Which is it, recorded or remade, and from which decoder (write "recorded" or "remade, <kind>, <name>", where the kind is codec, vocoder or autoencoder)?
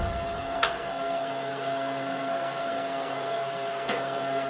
remade, codec, SNAC